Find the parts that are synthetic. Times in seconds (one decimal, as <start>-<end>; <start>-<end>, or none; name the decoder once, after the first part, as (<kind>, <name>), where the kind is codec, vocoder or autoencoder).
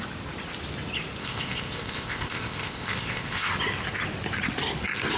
1.2-3.5 (codec, ZipCodec)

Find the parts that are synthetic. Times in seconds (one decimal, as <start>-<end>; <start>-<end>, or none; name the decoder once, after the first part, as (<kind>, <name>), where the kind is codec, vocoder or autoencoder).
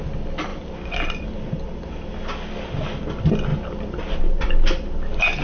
none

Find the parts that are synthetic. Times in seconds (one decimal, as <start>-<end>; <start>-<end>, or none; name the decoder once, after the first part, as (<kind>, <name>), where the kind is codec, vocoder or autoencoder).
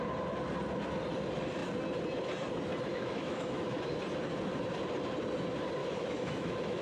2.9-4.0 (autoencoder, DAC-VAE); 5.8-6.8